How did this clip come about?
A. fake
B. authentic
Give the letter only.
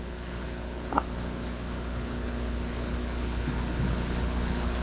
A